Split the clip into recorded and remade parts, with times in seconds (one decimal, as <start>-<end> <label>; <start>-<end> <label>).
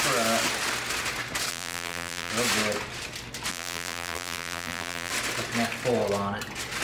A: 0.0-1.5 recorded; 1.5-2.3 remade; 2.3-3.5 recorded; 3.5-5.1 remade; 5.1-6.8 recorded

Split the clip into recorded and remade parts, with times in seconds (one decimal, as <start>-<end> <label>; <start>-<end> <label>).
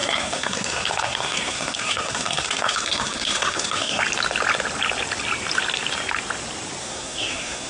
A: 0.0-4.0 remade; 4.0-6.8 recorded; 6.8-7.7 remade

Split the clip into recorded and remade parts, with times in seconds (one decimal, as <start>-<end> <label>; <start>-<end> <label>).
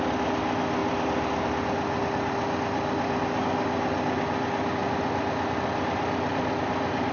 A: 0.0-7.1 recorded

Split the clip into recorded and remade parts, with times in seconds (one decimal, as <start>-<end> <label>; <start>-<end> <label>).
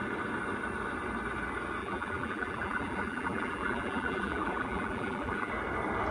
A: 0.0-1.8 recorded; 1.8-5.5 remade; 5.5-6.1 recorded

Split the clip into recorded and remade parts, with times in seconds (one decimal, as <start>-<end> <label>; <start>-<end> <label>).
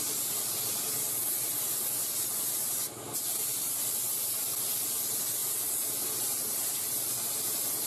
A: 0.0-7.9 recorded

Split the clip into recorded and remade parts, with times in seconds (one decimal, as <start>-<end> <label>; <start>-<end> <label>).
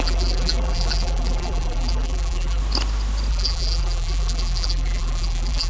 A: 0.0-2.6 remade; 2.6-3.3 recorded; 3.3-5.7 remade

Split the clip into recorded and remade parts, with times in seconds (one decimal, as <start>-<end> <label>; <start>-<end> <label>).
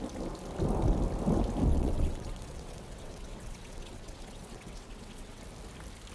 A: 0.0-1.7 recorded; 1.7-5.4 remade; 5.4-6.1 recorded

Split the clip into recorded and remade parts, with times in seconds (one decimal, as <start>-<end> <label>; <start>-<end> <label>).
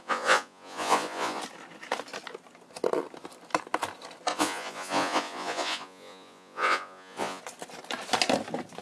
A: 0.0-1.4 remade; 1.4-4.3 recorded; 4.3-7.4 remade; 7.4-8.8 recorded